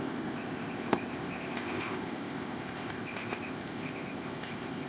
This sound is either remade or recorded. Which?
remade